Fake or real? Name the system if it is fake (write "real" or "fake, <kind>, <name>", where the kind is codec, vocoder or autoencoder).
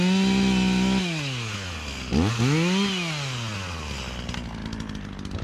real